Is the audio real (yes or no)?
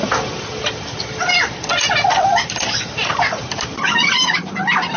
yes